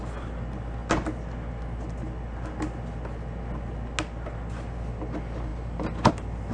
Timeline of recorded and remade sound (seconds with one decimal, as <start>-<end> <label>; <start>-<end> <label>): 0.0-6.5 recorded